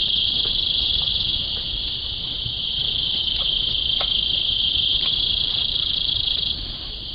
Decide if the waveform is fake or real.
fake